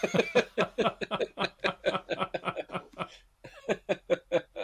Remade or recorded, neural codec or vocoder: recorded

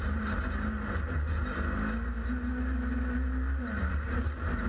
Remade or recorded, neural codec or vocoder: recorded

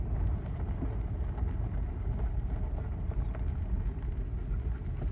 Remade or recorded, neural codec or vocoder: recorded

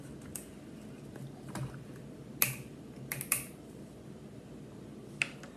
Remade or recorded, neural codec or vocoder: recorded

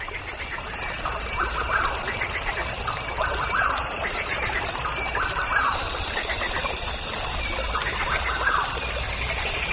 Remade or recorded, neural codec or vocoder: remade, vocoder, BigVGAN v2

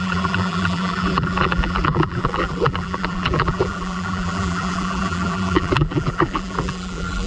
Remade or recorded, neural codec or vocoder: remade, vocoder, BigVGAN v2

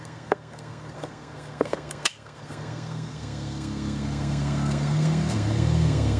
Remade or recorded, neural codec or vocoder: remade, codec, SNAC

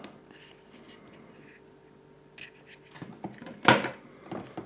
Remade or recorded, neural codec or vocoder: recorded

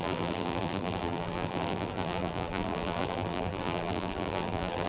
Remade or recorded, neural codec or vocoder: remade, vocoder, BigVGAN v2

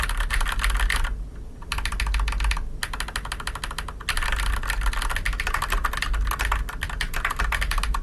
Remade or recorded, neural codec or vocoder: recorded